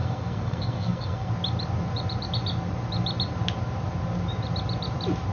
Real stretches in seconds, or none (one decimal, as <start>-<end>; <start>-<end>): 1.3-5.3